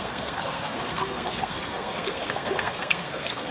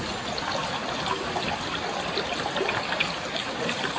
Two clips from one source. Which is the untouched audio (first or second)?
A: second